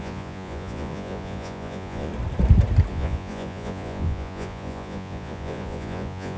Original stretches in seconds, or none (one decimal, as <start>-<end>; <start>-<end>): 2.1-2.9